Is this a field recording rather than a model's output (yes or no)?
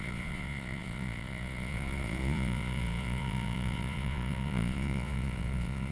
no